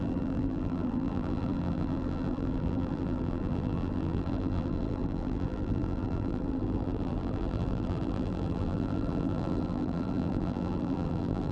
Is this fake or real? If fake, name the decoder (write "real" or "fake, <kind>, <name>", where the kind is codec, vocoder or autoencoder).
fake, vocoder, BigVGAN v2